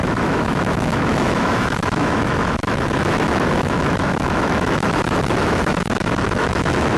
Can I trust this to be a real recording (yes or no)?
no